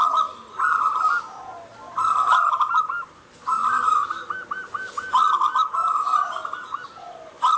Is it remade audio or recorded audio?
recorded